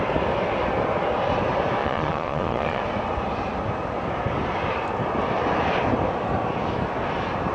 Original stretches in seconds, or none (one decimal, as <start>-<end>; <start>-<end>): 0.0-1.8; 2.8-7.5